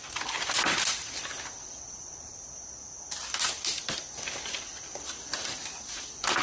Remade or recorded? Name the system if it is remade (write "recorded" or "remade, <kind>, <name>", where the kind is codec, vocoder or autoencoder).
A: recorded